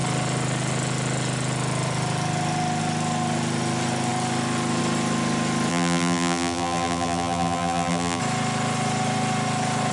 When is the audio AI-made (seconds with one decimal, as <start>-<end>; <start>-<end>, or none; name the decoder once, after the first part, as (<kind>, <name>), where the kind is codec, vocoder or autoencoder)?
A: 5.7-8.2 (vocoder, BigVGAN v2)